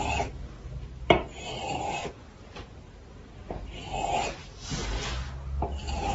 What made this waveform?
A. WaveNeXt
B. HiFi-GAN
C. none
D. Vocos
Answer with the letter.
C